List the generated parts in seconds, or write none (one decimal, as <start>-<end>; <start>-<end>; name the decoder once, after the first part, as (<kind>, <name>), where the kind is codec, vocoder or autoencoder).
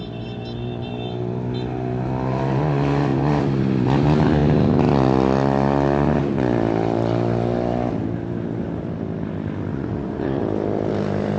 9.7-10.4 (vocoder, Vocos)